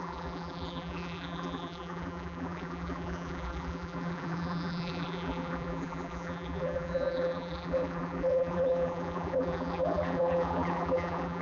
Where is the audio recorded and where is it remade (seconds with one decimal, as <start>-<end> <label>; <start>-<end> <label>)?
0.0-11.4 remade